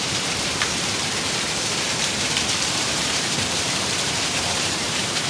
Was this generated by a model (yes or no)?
yes